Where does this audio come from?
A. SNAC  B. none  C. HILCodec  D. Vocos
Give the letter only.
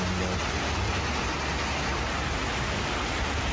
B